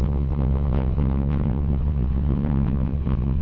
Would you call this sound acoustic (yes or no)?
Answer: no